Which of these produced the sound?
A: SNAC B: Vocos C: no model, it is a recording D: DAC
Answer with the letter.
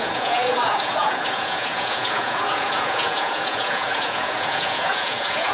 B